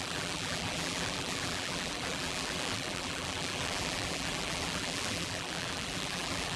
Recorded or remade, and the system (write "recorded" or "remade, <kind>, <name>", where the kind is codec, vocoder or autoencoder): remade, vocoder, BigVGAN v2